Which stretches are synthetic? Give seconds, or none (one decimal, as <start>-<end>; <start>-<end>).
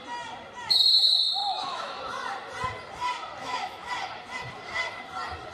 1.4-2.0; 3.4-3.9